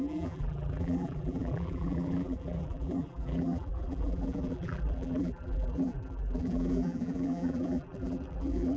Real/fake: fake